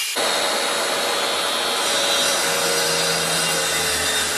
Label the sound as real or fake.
real